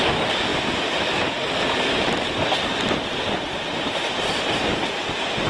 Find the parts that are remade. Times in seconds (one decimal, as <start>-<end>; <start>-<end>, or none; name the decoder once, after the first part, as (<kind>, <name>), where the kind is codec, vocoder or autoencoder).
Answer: none